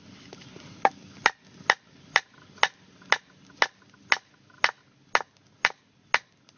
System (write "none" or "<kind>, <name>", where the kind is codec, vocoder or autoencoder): none